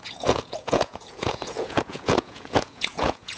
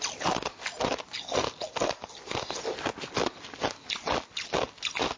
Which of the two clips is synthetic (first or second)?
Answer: first